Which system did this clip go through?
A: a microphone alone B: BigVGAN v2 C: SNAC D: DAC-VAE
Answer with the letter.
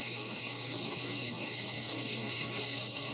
C